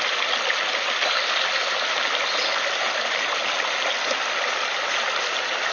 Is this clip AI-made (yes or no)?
no